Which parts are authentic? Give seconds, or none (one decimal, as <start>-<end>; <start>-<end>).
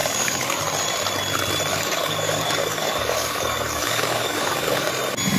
0.6-1.7; 4.9-5.4